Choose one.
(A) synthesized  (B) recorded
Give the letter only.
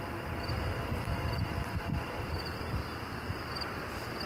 A